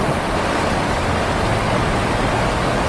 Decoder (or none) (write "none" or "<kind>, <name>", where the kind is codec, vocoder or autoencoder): none